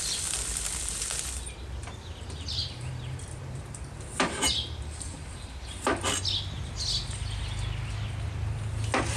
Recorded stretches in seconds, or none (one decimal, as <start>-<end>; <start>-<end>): 0.0-2.6; 6.0-9.2